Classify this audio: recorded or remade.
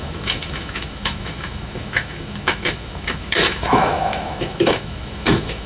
remade